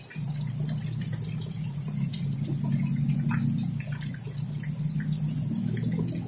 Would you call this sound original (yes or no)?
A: yes